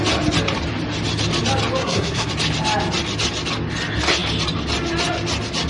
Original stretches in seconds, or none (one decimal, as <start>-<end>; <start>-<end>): 0.0-1.8; 2.3-5.7

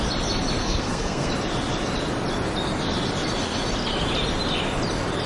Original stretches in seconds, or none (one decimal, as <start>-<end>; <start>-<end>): 0.0-0.6; 1.3-5.3